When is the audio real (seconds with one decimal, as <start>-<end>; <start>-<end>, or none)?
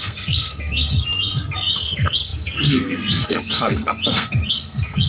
none